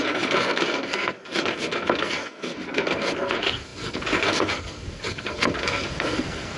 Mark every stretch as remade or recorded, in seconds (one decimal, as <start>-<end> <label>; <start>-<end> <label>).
0.0-6.6 remade